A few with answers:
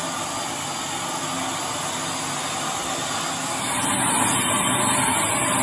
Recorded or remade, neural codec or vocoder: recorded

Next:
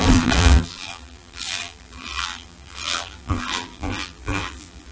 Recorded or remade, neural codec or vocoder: remade, vocoder, BigVGAN v2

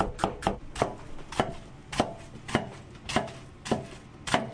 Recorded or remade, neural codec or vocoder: recorded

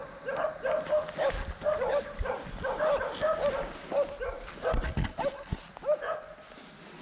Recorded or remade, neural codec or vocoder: recorded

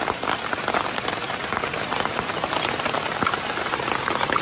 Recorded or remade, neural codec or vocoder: remade, vocoder, BigVGAN v2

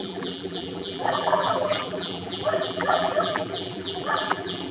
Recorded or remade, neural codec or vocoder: remade, vocoder, BigVGAN v2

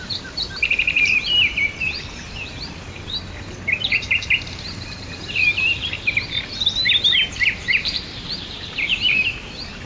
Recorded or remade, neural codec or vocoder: remade, vocoder, BigVGAN v2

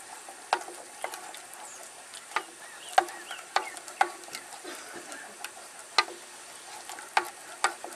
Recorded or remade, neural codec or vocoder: recorded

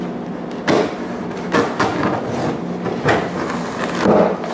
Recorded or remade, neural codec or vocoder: recorded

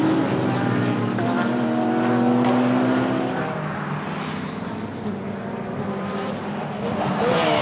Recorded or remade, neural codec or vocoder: recorded